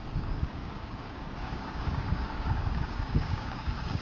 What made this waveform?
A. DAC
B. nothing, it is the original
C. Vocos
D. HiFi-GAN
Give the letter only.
A